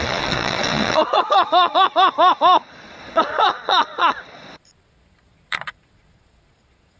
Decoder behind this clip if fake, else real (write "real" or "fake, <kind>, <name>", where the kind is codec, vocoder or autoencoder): fake, vocoder, Vocos